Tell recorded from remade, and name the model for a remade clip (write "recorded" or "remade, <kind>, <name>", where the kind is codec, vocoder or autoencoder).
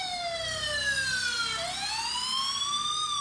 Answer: recorded